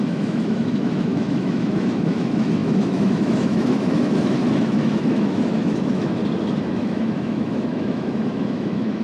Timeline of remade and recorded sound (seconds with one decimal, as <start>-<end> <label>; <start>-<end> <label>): 0.0-6.2 remade; 6.2-6.7 recorded; 6.7-9.0 remade